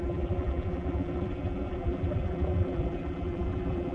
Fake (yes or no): yes